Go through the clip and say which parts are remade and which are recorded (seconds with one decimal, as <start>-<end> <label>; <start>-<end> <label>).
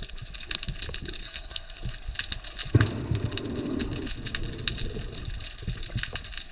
0.0-1.2 recorded; 1.2-1.8 remade; 1.8-6.5 recorded